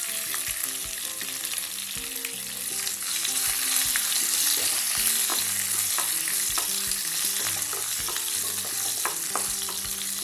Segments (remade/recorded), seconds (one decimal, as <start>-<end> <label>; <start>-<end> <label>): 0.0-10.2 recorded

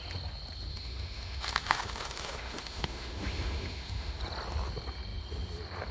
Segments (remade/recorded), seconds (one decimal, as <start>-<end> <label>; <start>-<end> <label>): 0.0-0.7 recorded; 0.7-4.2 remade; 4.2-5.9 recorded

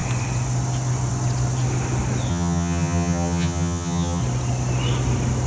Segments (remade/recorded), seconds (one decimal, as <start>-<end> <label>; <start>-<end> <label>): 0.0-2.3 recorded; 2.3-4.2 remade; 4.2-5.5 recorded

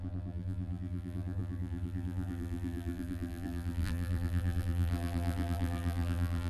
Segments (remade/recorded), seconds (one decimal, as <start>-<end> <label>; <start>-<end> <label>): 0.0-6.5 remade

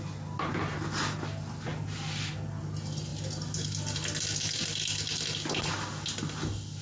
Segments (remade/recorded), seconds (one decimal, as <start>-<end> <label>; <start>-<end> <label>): 0.0-6.8 recorded

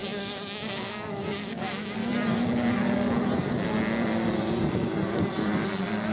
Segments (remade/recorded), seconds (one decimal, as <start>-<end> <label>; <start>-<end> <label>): 0.0-2.0 remade; 2.0-6.1 recorded

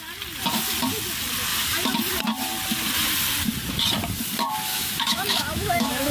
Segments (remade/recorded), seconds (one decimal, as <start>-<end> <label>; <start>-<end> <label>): 0.0-4.7 recorded; 4.7-6.1 remade

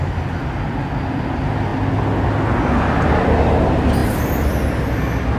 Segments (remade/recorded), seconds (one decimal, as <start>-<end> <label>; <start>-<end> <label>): 0.0-5.4 recorded